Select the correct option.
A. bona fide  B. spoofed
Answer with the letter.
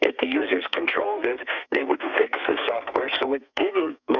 B